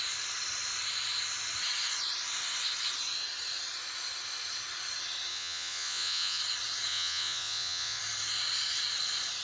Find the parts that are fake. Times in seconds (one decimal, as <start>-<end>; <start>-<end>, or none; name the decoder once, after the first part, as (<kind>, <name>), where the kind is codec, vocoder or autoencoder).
5.3-6.4 (vocoder, Vocos); 6.9-8.0